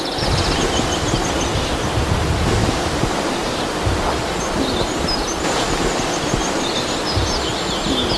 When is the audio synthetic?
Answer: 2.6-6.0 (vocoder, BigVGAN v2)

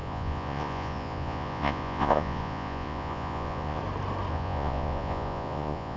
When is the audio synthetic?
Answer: 0.0-3.8 (vocoder, Vocos); 4.3-6.0

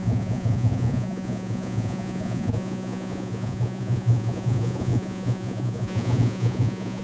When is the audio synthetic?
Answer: 0.0-7.0 (vocoder, Vocos)

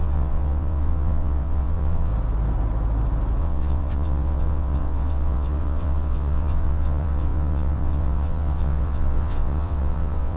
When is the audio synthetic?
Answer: 0.0-2.1 (vocoder, WaveNeXt); 3.4-10.4

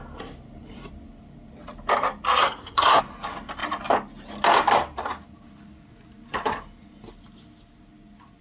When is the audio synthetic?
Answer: 2.4-3.0 (codec, SNAC)

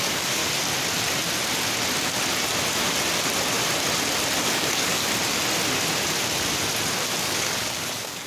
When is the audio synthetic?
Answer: 0.0-0.4 (codec, DAC); 4.4-5.0; 7.2-8.3

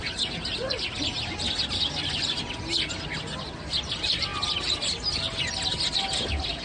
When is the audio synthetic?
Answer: none

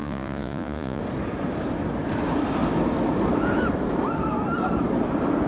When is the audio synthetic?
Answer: 0.0-1.0 (vocoder, Vocos)